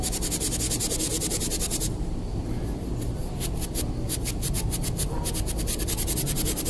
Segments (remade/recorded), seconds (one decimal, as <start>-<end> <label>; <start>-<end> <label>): 0.0-6.7 recorded